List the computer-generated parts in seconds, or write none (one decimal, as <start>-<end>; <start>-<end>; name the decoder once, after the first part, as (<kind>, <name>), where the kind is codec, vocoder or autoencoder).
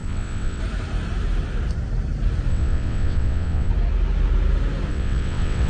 0.0-0.6 (vocoder, WaveNeXt); 2.5-3.7; 4.9-5.7